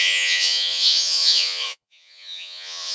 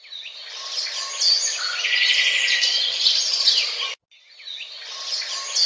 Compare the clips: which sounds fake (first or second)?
first